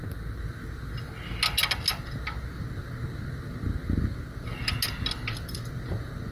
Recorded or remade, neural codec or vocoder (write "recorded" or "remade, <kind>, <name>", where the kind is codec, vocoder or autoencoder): recorded